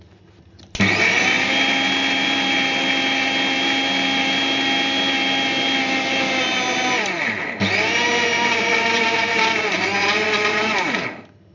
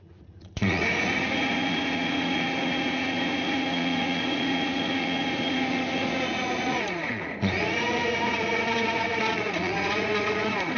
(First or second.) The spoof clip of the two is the second